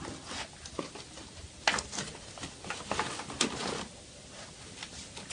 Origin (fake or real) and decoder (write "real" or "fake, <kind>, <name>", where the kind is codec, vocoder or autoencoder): real